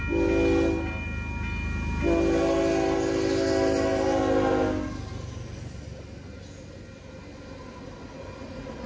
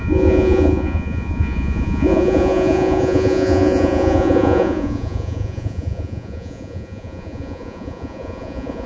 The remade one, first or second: second